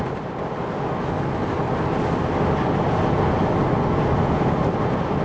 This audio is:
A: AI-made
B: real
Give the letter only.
B